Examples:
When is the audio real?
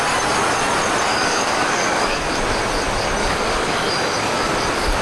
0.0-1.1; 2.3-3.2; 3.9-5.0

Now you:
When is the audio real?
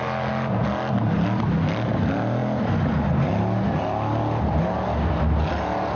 0.0-6.0